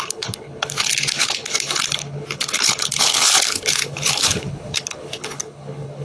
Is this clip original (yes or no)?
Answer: no